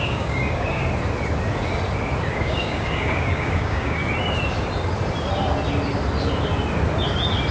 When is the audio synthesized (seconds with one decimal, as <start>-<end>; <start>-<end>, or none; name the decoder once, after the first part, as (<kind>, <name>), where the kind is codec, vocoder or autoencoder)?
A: 0.0-0.8 (codec, DAC); 2.3-4.0